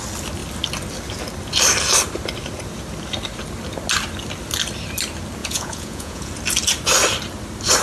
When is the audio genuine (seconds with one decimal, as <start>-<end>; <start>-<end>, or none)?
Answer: 0.0-5.4; 6.3-7.8